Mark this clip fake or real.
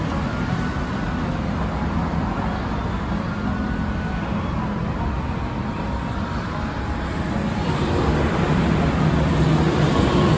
real